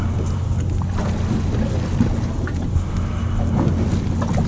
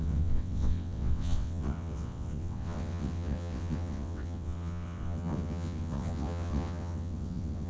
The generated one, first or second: second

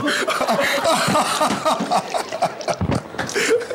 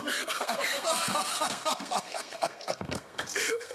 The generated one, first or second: second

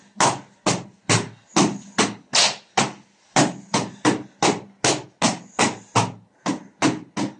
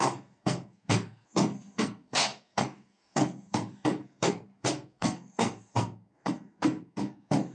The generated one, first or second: second